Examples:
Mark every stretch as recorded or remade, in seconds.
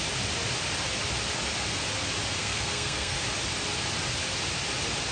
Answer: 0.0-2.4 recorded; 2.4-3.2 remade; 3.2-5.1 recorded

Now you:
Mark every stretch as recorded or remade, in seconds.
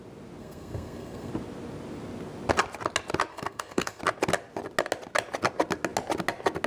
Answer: 0.0-0.4 recorded; 0.4-1.3 remade; 1.3-3.3 recorded; 3.3-4.0 remade; 4.0-6.7 recorded